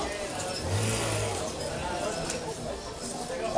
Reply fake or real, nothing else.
real